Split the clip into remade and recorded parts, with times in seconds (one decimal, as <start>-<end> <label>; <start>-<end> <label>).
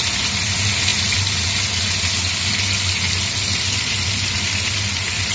0.0-5.3 recorded